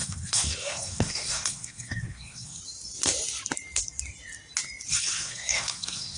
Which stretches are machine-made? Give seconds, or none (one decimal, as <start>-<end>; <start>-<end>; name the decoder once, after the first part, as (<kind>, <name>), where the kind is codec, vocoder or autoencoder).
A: 0.0-2.6 (codec, SNAC); 4.9-6.2